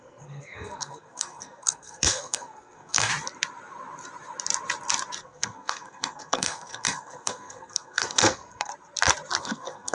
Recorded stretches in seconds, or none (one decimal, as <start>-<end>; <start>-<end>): 3.1-5.2; 8.7-9.4